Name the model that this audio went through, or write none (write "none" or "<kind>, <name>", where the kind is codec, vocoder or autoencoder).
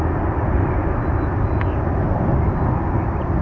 none